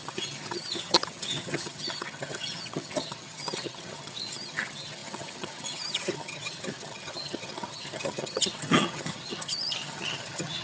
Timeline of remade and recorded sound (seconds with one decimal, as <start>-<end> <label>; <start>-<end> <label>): 0.0-10.6 remade